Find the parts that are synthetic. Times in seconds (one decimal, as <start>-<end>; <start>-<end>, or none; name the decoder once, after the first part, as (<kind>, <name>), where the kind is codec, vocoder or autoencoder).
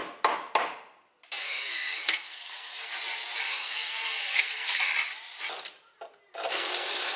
1.4-2.9 (codec, SNAC); 3.4-4.9; 6.5-7.2